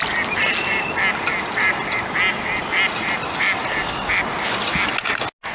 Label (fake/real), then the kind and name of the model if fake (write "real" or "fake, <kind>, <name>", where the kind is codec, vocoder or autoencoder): real